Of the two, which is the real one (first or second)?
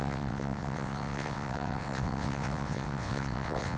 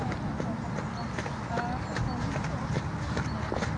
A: second